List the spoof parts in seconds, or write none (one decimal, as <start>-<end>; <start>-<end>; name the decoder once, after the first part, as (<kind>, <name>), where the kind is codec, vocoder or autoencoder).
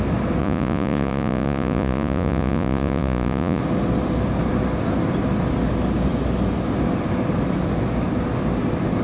0.4-3.6 (vocoder, Vocos)